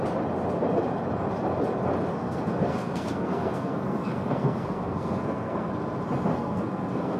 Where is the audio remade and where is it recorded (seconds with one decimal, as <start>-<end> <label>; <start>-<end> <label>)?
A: 0.0-2.1 recorded; 2.1-5.7 remade; 5.7-6.3 recorded; 6.3-7.2 remade